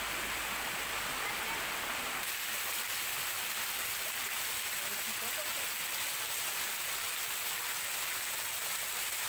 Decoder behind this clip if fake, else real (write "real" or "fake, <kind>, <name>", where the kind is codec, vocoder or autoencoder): real